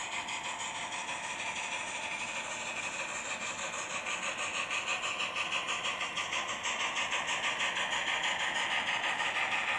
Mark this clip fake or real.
real